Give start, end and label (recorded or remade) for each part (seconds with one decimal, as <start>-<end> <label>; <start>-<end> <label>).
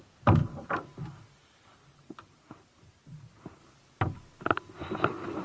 0.0-0.4 recorded; 0.4-3.6 remade; 3.6-5.4 recorded